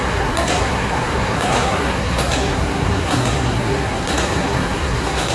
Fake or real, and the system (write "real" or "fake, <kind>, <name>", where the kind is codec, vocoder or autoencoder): fake, codec, SNAC